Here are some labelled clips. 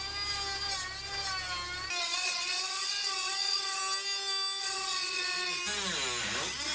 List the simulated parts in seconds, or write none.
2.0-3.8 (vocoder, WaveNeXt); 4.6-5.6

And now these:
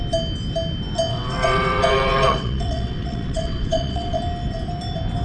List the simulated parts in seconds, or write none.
1.1-4.2 (vocoder, WaveNeXt)

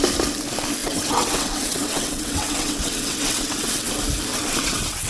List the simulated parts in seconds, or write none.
0.8-3.9 (vocoder, WaveNeXt); 4.3-5.1

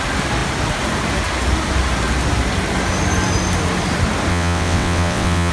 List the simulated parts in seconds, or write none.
4.3-5.5 (vocoder, WaveNeXt)

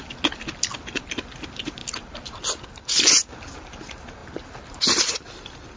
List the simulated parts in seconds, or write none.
none

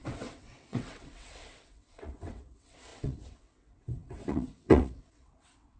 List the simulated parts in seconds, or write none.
0.0-5.8 (vocoder, WaveNeXt)

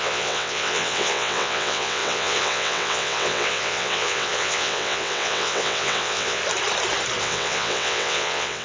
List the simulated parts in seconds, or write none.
0.0-6.4 (vocoder, WaveNeXt); 7.2-8.6

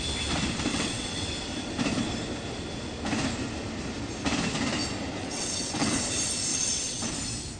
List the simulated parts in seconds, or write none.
0.7-1.3 (vocoder, WaveNeXt); 5.2-6.0; 6.5-7.1